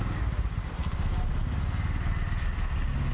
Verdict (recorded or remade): recorded